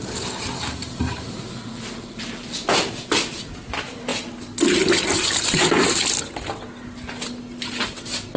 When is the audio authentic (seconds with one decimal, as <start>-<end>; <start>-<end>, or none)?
4.1-6.2

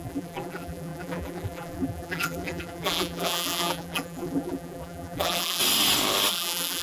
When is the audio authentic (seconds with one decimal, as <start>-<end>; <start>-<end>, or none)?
5.6-6.3

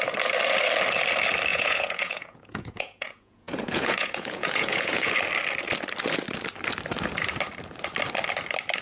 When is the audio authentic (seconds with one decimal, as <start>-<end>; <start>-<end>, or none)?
0.0-1.5; 5.1-8.8

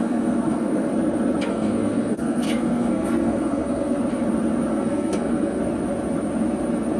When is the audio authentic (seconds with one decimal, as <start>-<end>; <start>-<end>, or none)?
0.9-1.5; 4.0-4.7; 5.6-7.0

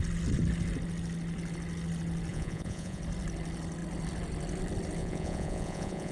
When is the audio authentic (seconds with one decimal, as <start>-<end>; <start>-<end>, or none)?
0.0-2.3; 3.0-5.0

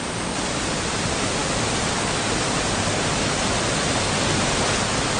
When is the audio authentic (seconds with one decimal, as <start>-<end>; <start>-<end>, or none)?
0.0-5.2